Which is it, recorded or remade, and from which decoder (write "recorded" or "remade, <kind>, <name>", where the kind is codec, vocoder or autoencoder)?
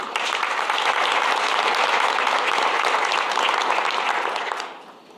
remade, vocoder, BigVGAN v2